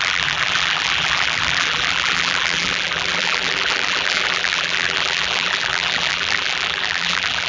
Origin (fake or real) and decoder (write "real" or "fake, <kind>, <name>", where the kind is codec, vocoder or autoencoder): fake, vocoder, BigVGAN v2